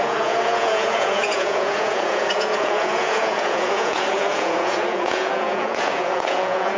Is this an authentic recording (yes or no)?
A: no